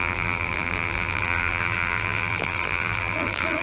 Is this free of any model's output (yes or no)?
no